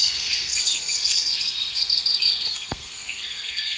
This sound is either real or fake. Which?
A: fake